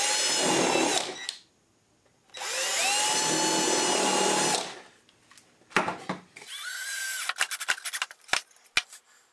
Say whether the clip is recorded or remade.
recorded